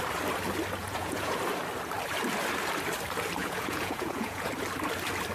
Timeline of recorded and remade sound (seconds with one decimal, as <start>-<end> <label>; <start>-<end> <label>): 0.0-0.8 recorded; 0.8-1.4 remade; 1.4-3.4 recorded; 3.4-4.5 remade; 4.5-5.3 recorded

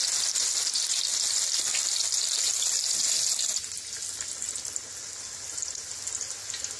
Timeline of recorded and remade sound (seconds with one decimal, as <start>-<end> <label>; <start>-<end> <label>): 0.0-6.8 recorded

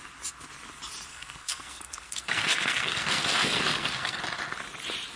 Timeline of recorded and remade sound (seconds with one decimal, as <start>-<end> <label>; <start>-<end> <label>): 0.0-1.1 recorded; 1.1-4.2 remade; 4.2-5.2 recorded

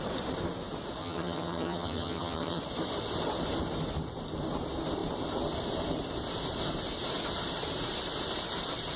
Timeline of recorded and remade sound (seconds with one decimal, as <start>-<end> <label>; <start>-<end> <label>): 0.0-1.0 recorded; 1.0-2.6 remade; 2.6-9.0 recorded

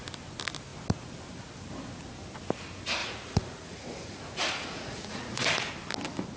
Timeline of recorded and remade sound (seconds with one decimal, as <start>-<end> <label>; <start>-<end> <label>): 0.0-3.0 recorded; 3.0-5.7 remade; 5.7-6.4 recorded

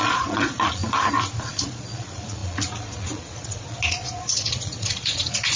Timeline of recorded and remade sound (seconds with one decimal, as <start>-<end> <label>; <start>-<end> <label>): 0.0-0.8 remade; 0.8-1.4 recorded; 1.4-5.6 remade